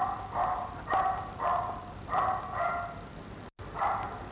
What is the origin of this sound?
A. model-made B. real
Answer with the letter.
B